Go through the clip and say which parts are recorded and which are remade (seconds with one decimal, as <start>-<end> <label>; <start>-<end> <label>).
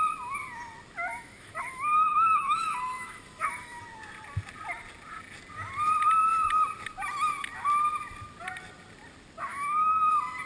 0.0-1.1 recorded; 1.1-3.8 remade; 3.8-9.5 recorded; 9.5-10.1 remade; 10.1-10.5 recorded